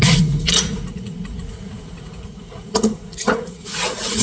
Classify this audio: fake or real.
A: fake